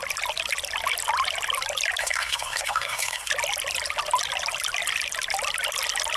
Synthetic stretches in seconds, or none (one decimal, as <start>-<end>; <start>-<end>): 2.0-3.3